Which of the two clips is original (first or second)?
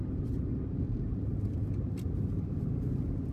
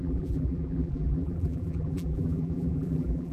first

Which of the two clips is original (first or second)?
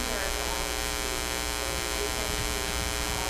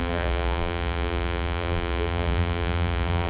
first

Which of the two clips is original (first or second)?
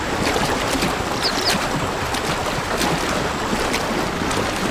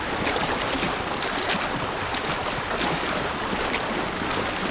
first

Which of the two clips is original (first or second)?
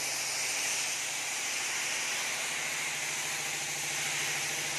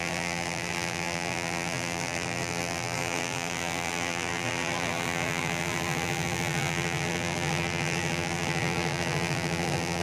first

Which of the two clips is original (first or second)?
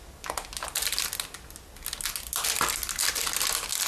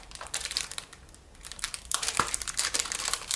first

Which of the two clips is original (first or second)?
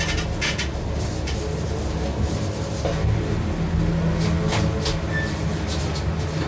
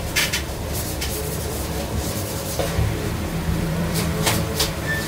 first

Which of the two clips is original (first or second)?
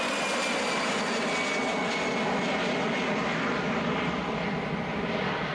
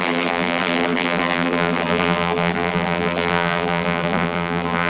first